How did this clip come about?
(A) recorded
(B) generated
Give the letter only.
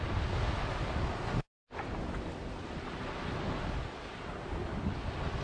A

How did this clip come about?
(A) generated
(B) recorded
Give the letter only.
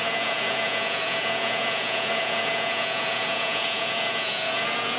A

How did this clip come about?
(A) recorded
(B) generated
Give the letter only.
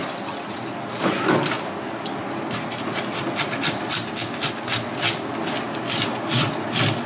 A